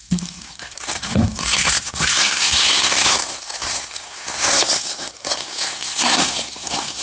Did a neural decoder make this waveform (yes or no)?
yes